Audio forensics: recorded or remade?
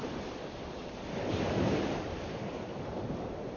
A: remade